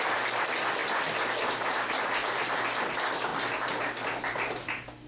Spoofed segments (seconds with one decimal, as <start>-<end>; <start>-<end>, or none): none